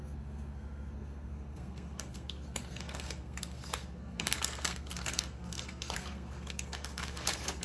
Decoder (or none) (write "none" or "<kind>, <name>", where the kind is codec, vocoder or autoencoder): codec, SNAC